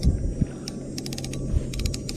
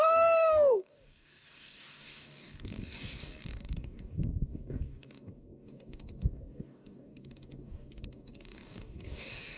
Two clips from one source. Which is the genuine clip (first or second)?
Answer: first